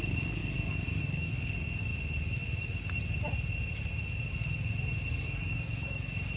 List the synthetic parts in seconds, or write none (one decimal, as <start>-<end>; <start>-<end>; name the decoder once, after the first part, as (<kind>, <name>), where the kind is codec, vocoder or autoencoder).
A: 0.0-1.9 (codec, DAC); 5.1-6.4